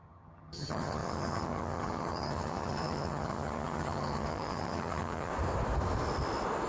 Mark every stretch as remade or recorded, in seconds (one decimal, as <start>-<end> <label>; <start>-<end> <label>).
0.0-5.3 remade; 5.3-6.7 recorded